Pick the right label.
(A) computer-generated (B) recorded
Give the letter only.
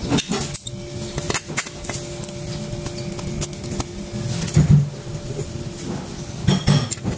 B